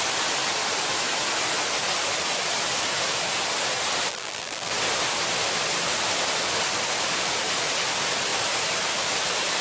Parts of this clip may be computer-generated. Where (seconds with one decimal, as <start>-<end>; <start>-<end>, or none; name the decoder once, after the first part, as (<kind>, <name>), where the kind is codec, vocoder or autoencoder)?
4.1-4.7 (vocoder, BigVGAN v2)